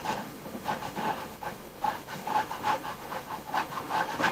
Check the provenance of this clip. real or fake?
fake